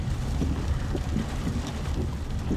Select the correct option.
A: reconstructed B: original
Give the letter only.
A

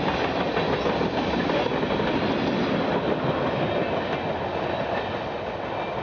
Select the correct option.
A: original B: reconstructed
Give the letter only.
A